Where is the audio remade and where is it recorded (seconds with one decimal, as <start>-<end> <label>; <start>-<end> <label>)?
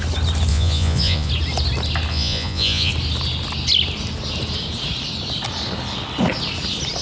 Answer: 0.0-0.5 recorded; 0.5-1.3 remade; 1.3-2.1 recorded; 2.1-2.9 remade; 2.9-7.0 recorded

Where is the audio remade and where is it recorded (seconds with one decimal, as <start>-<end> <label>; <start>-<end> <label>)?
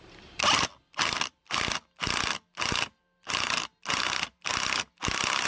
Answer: 0.0-5.5 recorded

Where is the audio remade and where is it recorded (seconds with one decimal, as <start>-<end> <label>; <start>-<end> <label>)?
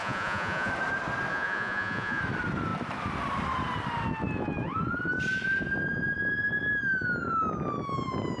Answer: 0.0-0.7 remade; 0.7-1.3 recorded; 1.3-2.2 remade; 2.2-8.4 recorded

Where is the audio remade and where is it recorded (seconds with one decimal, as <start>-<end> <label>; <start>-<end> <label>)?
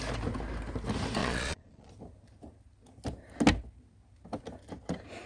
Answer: 0.0-1.2 recorded; 1.2-1.9 remade; 1.9-5.3 recorded